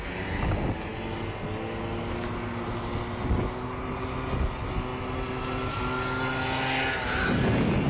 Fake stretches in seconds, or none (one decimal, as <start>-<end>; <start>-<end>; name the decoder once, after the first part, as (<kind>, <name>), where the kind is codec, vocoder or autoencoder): none